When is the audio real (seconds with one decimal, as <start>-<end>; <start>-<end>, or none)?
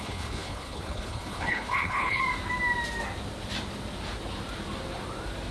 2.2-5.5